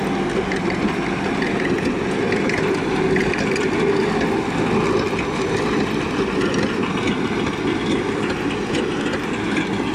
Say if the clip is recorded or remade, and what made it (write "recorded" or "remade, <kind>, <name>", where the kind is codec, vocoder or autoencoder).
recorded